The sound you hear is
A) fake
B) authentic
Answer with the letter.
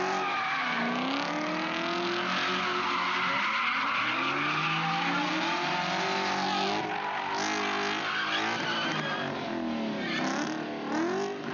B